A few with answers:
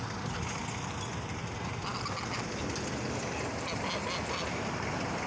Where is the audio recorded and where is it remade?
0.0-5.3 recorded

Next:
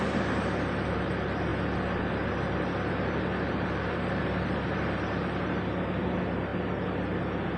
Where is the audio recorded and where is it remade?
0.0-7.6 recorded

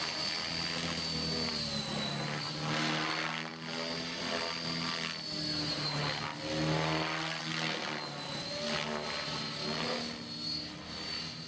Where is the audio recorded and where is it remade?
0.0-11.5 recorded